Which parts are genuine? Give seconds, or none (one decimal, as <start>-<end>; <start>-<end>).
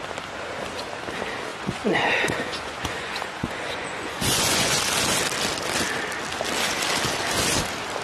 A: 0.0-1.5; 4.8-8.0